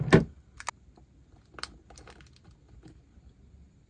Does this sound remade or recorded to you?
recorded